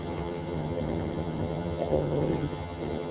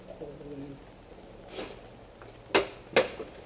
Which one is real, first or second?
second